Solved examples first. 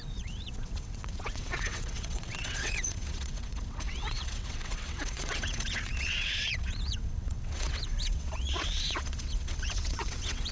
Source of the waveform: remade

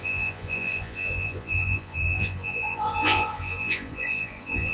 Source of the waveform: remade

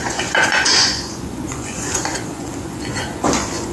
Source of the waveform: remade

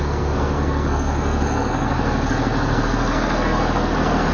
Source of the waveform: remade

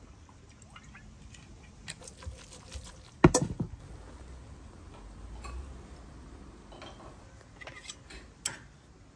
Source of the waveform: recorded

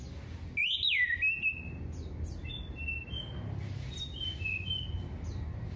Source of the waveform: recorded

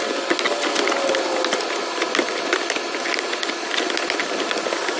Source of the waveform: recorded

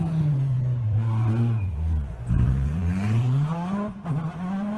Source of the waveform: remade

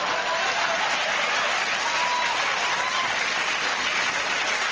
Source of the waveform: recorded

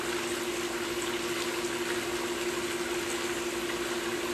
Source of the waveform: recorded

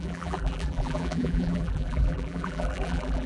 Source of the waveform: remade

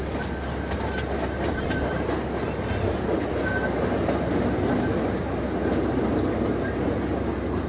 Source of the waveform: recorded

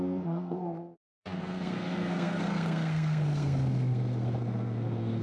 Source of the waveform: remade